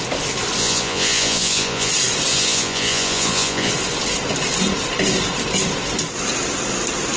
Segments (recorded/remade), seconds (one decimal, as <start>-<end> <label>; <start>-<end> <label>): 0.0-0.6 recorded; 0.6-1.9 remade; 1.9-2.3 recorded; 2.3-3.7 remade; 3.7-7.2 recorded